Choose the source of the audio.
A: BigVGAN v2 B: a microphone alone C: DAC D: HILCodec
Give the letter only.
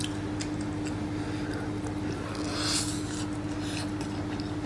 B